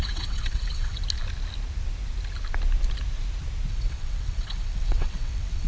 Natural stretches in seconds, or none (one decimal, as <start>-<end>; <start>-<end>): 1.0-3.7